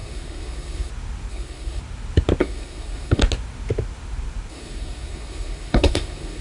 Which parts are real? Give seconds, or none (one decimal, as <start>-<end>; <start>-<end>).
0.9-1.3; 1.8-2.4; 3.2-4.5